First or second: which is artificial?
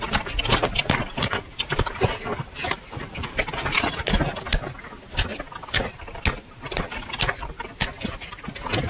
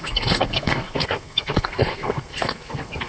second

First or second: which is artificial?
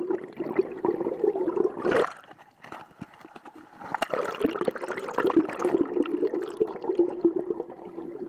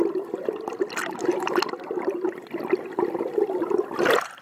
first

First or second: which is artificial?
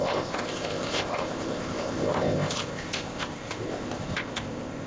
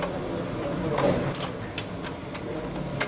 first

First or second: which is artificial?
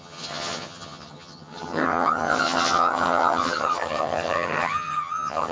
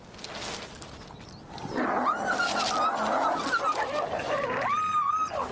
first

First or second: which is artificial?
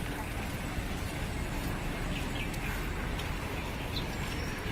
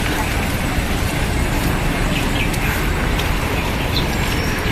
second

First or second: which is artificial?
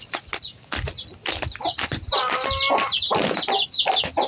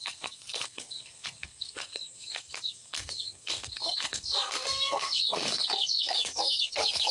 second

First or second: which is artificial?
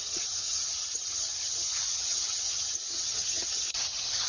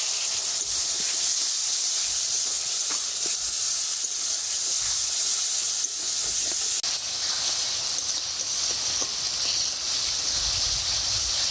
first